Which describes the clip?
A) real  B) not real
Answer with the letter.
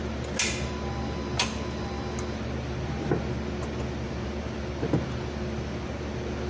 A